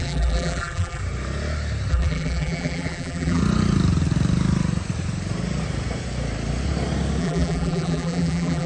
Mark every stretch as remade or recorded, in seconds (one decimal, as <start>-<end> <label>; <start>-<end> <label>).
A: 0.0-1.0 remade; 1.0-1.9 recorded; 1.9-3.4 remade; 3.4-7.2 recorded; 7.2-8.7 remade